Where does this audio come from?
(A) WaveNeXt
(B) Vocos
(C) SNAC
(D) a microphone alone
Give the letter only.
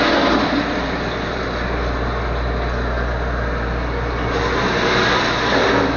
D